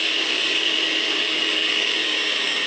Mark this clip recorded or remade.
remade